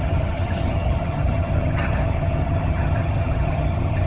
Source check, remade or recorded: remade